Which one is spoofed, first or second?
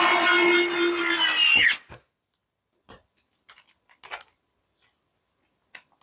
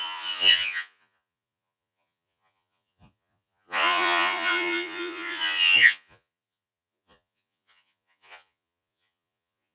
second